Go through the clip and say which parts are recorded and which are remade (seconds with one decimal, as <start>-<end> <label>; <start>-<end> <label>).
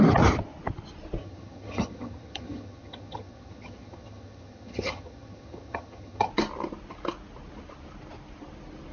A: 0.0-1.2 recorded; 1.2-6.3 remade; 6.3-8.9 recorded